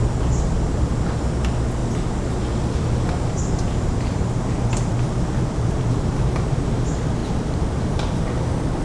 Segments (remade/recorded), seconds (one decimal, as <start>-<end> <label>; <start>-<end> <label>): 0.0-7.2 recorded; 7.2-8.0 remade; 8.0-8.8 recorded